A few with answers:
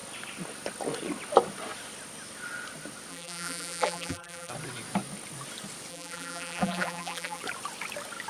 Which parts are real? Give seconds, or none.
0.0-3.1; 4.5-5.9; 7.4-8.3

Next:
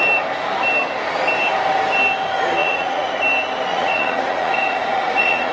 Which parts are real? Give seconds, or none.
0.0-2.6; 3.1-3.7

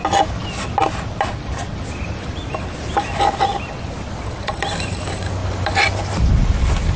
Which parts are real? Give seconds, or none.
0.0-7.0

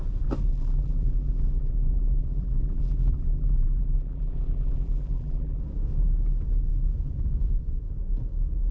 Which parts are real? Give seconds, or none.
0.0-0.5; 5.6-8.7

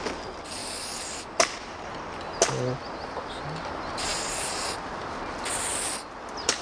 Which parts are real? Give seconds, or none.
0.0-6.6